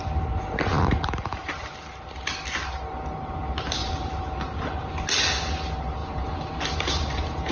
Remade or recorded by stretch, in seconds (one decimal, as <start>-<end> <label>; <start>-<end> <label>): 0.0-0.7 recorded; 0.7-1.4 remade; 1.4-3.8 recorded; 3.8-5.0 remade; 5.0-6.0 recorded; 6.0-7.5 remade